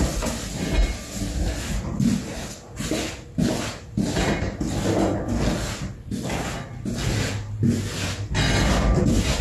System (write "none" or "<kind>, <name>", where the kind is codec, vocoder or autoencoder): none